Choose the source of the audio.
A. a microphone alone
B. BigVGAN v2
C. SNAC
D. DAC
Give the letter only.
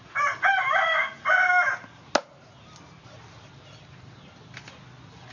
A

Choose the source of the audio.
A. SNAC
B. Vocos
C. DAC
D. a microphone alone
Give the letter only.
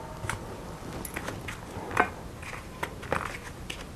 D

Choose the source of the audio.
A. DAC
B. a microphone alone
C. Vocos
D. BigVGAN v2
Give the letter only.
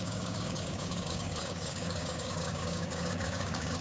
A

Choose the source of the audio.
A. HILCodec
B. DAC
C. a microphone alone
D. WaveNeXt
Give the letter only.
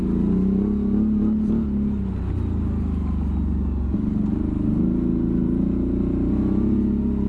C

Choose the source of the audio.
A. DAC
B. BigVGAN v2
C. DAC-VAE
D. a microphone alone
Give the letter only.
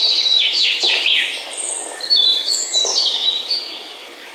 A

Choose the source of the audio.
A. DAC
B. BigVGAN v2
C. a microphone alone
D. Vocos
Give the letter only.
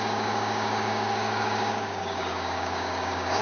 A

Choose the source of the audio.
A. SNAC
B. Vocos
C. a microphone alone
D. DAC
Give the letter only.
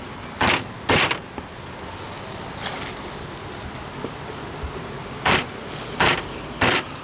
C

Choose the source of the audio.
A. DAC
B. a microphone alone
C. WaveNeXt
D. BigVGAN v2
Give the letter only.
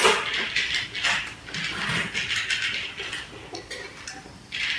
B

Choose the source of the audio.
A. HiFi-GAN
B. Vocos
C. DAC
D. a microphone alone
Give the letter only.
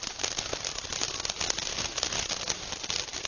D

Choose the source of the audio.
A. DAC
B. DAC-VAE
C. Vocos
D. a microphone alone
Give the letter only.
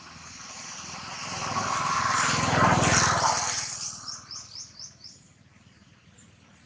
D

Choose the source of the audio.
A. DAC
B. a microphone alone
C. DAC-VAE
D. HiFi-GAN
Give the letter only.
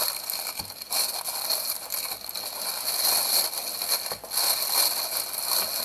B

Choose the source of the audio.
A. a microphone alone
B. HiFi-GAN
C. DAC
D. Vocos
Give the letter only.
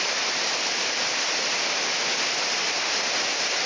A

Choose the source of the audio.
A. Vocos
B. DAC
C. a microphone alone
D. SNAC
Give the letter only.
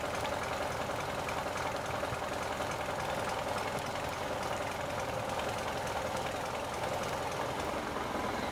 C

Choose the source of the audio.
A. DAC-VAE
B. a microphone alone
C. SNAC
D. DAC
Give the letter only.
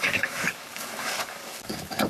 D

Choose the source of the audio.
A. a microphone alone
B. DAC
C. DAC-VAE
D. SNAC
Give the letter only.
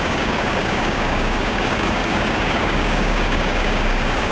B